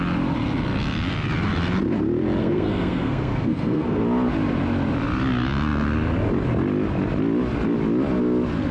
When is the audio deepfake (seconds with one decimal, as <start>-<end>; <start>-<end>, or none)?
2.4-4.0